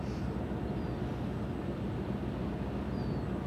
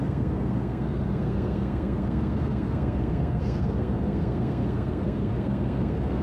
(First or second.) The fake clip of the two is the second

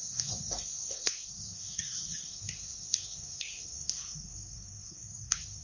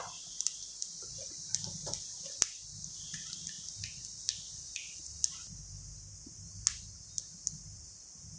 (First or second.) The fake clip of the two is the first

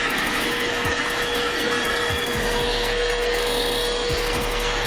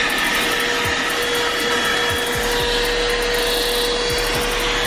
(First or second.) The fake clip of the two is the first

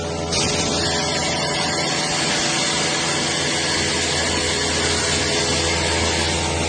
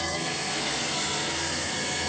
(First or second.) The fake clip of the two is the second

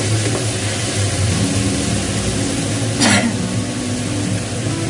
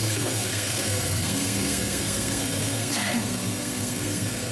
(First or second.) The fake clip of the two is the second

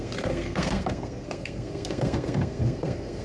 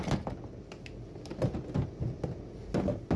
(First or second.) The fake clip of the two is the first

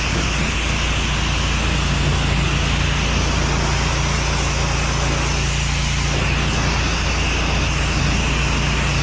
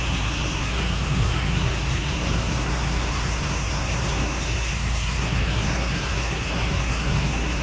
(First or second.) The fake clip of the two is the second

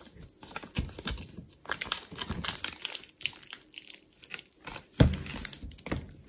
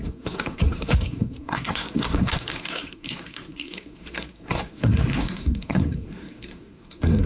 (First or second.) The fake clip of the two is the second